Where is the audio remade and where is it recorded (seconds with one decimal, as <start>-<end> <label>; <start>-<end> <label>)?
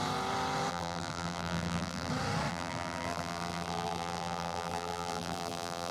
0.0-0.7 recorded; 0.7-2.1 remade; 2.1-2.5 recorded; 2.5-5.9 remade